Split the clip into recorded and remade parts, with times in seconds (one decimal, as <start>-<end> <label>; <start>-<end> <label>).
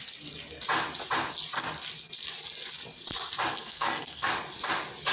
0.0-3.5 recorded; 3.5-4.3 remade; 4.3-5.1 recorded